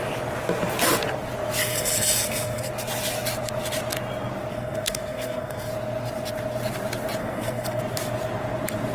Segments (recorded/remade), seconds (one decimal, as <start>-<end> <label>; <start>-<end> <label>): 0.0-1.6 recorded; 1.6-2.7 remade; 2.7-4.5 recorded; 4.5-5.7 remade; 5.7-7.2 recorded; 7.2-7.8 remade; 7.8-8.9 recorded